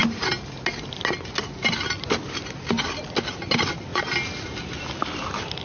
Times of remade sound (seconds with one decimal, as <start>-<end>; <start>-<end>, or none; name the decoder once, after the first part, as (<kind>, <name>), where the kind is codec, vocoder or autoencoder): none

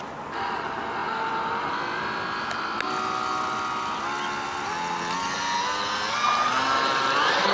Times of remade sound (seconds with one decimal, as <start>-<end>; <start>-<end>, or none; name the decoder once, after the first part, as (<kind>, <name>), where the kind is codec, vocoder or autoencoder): 1.0-1.6 (vocoder, BigVGAN v2)